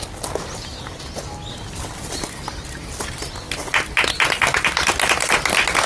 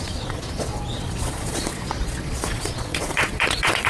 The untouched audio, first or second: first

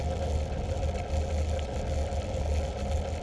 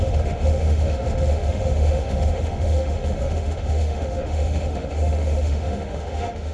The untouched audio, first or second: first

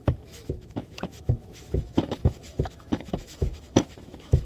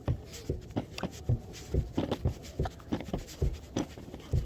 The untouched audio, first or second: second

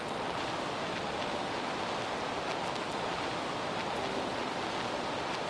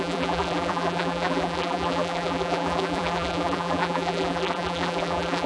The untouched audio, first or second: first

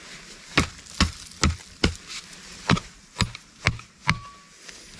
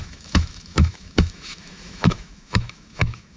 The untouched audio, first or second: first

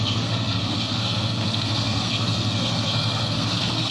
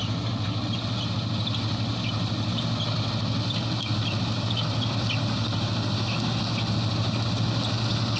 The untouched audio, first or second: second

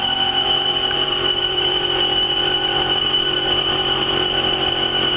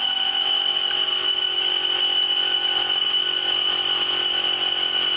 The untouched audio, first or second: second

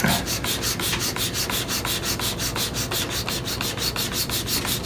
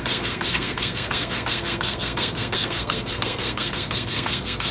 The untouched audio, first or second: first